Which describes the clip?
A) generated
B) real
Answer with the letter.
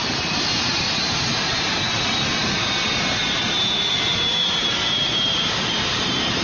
A